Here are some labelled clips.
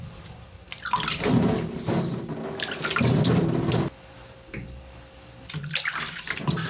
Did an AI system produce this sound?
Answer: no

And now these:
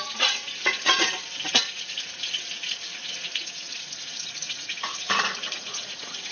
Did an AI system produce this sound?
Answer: yes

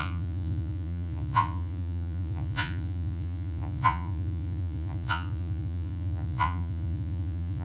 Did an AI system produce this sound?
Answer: yes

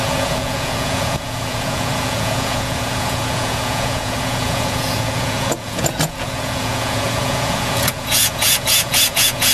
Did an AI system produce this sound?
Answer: yes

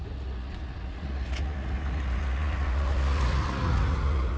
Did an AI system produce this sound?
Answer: yes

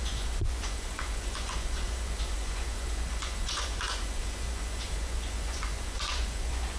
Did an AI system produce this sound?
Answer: yes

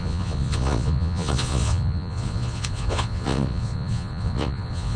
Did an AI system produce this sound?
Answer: yes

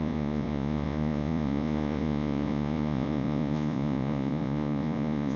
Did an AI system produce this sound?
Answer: yes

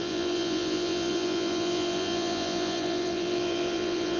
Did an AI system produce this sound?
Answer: yes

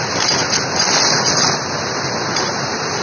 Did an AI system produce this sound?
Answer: no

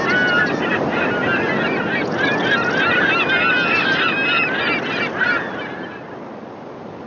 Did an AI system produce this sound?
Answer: no